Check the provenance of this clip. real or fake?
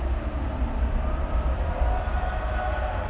real